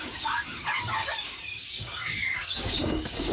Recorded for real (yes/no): no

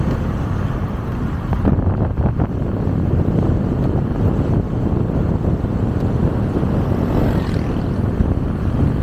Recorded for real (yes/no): yes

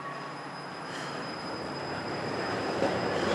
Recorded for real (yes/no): no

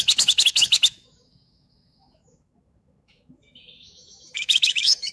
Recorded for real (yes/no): no